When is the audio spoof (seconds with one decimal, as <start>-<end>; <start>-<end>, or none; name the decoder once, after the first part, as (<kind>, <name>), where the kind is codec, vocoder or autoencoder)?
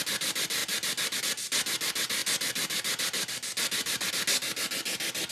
none